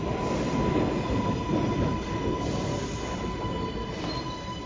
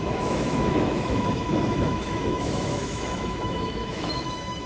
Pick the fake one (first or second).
second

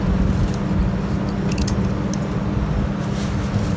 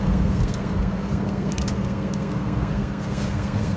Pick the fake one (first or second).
second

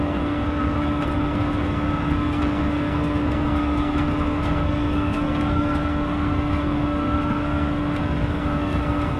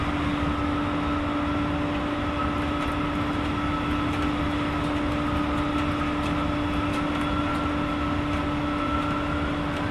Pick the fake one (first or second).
first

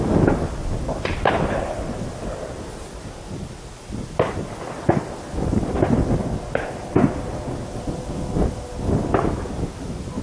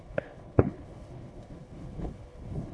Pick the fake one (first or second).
second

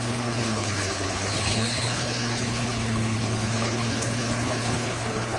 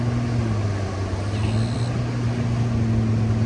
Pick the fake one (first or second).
first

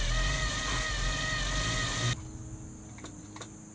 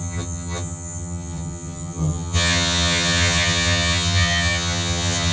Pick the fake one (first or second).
second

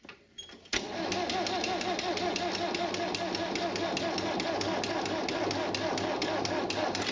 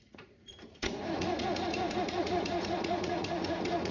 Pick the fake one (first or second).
second